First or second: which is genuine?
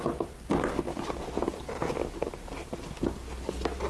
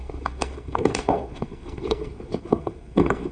first